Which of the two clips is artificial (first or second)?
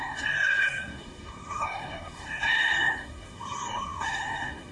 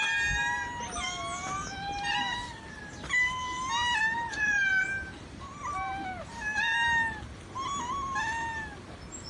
first